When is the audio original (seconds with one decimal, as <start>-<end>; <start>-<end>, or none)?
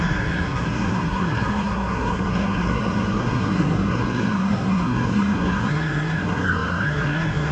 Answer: none